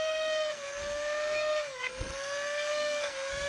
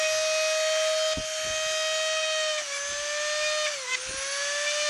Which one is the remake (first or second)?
first